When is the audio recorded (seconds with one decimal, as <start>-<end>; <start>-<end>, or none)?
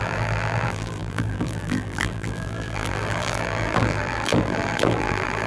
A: none